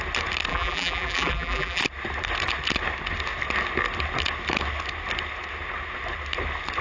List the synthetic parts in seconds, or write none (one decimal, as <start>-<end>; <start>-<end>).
0.5-1.8

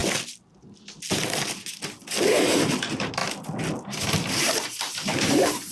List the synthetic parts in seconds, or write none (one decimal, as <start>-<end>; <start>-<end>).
2.6-3.2; 4.3-5.7